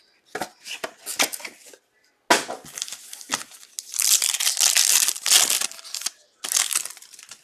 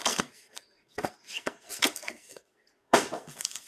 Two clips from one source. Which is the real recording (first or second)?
first